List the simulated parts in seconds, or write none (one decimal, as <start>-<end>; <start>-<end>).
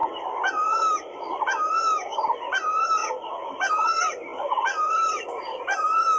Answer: 4.3-5.6